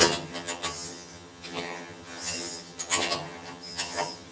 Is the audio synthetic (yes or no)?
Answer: yes